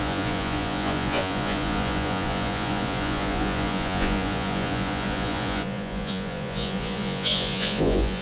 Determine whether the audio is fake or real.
fake